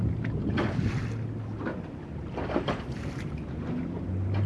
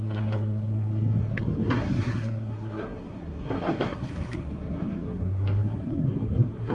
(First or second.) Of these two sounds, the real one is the first